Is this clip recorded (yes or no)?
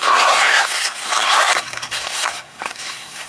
no